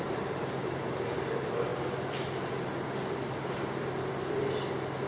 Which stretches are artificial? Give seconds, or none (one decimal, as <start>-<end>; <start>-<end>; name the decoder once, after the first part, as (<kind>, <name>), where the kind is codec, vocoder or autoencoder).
0.0-1.7 (vocoder, BigVGAN v2)